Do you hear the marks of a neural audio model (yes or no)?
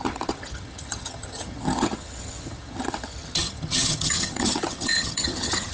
yes